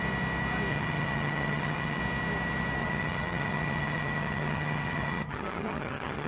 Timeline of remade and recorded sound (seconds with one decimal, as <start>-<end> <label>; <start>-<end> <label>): 0.0-0.7 recorded; 0.7-2.0 remade; 2.0-2.8 recorded; 2.8-6.3 remade